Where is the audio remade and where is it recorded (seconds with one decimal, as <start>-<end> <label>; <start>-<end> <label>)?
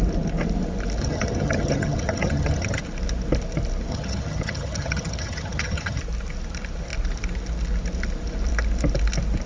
0.0-1.0 recorded; 1.0-2.8 remade; 2.8-3.9 recorded; 3.9-6.0 remade; 6.0-9.5 recorded